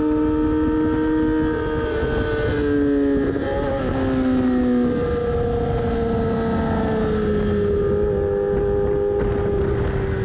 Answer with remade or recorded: recorded